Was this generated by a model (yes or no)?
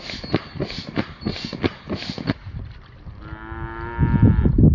no